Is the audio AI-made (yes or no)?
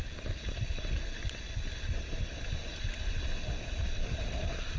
no